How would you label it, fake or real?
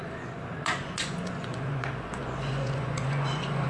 fake